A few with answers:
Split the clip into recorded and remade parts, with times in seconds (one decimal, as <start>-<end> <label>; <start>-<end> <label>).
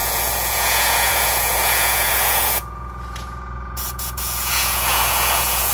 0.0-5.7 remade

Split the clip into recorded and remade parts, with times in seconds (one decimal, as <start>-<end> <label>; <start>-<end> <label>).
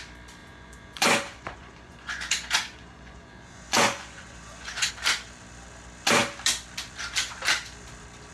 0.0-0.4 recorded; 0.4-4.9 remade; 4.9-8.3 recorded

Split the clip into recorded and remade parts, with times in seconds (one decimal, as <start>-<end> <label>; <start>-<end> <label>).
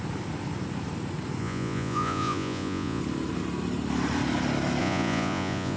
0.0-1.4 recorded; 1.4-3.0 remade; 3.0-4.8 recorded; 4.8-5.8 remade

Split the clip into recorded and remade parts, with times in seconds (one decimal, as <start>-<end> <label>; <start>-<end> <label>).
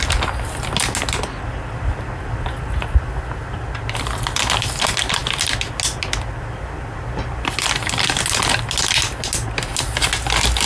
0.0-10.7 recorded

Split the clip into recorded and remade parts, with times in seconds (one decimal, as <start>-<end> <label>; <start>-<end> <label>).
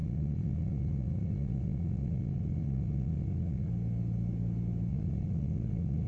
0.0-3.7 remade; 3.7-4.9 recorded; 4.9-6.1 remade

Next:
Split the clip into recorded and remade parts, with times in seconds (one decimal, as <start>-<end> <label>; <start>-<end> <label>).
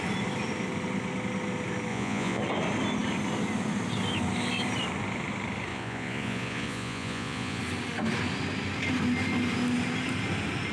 0.0-1.9 recorded; 1.9-2.4 remade; 2.4-5.7 recorded; 5.7-7.6 remade; 7.6-10.7 recorded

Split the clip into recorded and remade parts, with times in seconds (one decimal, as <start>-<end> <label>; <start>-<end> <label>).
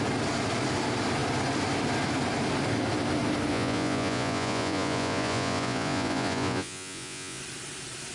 0.0-3.5 recorded; 3.5-7.4 remade; 7.4-8.1 recorded